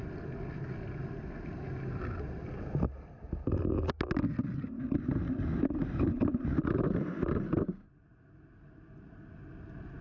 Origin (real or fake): real